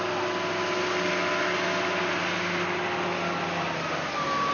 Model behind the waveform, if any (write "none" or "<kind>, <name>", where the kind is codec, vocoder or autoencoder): none